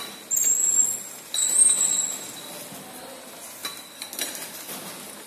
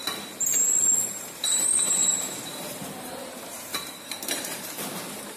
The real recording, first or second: first